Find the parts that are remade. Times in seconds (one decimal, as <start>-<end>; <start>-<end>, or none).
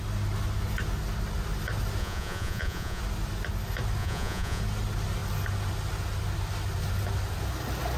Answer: 2.0-3.0; 4.0-4.6